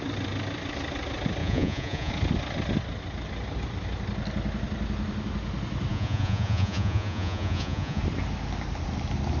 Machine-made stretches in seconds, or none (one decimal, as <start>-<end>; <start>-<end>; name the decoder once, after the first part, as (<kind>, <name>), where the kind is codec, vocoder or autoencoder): 1.4-2.1 (vocoder, Vocos); 5.9-8.0